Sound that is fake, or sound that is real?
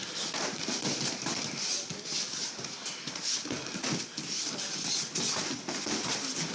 real